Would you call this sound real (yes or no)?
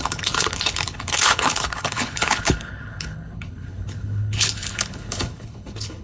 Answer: no